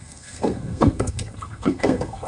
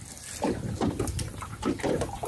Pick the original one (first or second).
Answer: second